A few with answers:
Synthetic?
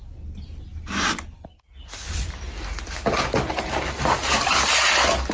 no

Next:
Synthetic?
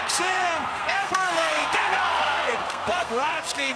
yes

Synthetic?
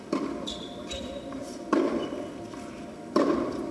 yes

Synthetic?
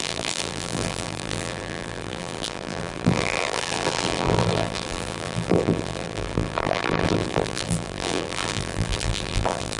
yes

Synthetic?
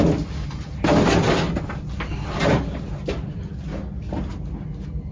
no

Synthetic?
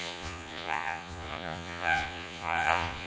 yes